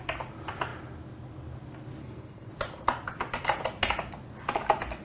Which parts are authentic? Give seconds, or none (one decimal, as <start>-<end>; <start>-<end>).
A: 0.0-2.0; 2.5-5.0

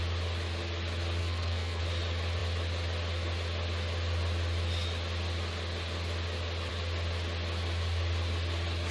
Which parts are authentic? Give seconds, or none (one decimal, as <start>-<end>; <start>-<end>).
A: 0.0-1.2; 1.8-8.9